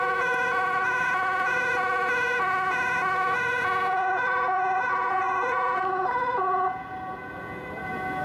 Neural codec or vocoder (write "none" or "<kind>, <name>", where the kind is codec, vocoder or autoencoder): vocoder, Vocos